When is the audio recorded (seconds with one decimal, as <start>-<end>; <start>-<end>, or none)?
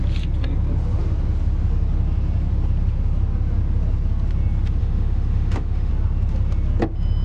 0.0-4.8; 5.9-7.2